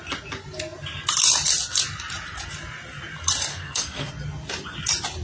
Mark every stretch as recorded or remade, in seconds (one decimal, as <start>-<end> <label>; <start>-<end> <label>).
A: 0.0-3.5 recorded; 3.5-4.1 remade; 4.1-5.2 recorded